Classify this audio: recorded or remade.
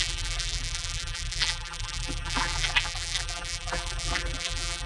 remade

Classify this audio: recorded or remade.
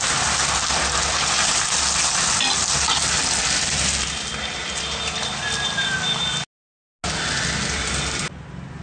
recorded